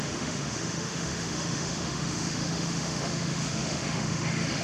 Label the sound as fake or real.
fake